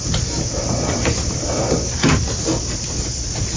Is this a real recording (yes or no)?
no